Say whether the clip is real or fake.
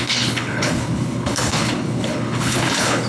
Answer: fake